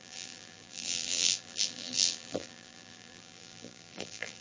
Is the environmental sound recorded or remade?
remade